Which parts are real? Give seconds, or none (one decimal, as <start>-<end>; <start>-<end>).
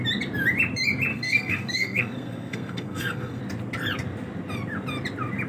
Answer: 0.0-1.1; 3.4-5.5